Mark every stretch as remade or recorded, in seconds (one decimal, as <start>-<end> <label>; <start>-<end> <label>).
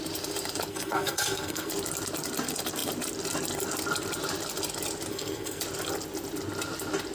0.0-0.7 recorded; 0.7-1.7 remade; 1.7-5.1 recorded; 5.1-5.6 remade; 5.6-7.1 recorded